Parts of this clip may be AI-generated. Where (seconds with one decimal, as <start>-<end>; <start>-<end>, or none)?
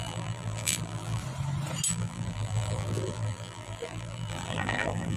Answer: 0.0-1.2; 1.9-5.2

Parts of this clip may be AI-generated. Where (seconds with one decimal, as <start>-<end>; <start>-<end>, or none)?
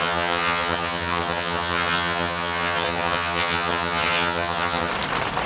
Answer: 0.0-4.9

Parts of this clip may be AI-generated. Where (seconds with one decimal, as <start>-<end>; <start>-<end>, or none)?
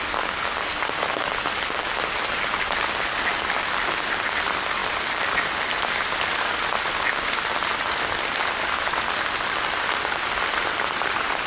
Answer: none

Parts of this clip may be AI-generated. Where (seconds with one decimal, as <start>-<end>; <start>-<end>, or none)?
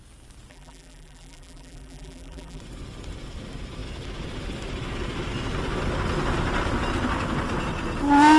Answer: 0.5-2.6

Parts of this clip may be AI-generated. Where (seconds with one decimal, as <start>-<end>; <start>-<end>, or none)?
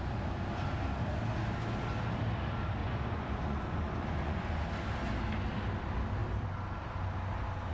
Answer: 2.8-4.6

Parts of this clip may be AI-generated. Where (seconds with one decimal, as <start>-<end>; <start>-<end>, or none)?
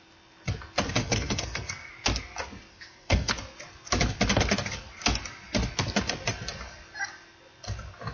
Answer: 1.0-1.9; 2.7-3.3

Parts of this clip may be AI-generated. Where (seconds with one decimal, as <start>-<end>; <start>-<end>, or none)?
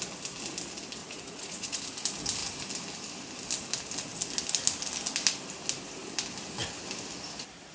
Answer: 1.0-1.8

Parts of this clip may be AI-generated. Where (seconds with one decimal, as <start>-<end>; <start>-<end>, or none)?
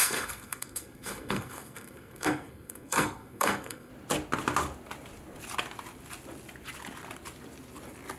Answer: 0.0-3.9